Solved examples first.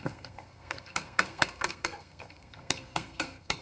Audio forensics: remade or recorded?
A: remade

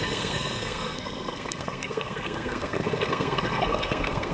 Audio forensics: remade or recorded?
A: remade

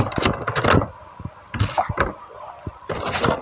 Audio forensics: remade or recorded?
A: recorded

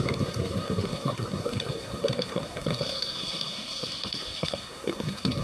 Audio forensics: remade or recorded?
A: remade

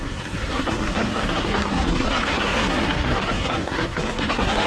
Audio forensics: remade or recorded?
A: remade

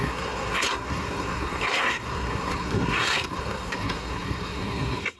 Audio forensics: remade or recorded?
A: remade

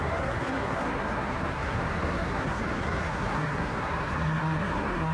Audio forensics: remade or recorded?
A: remade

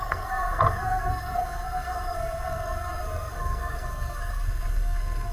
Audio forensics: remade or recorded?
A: remade